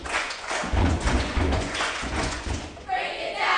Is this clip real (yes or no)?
no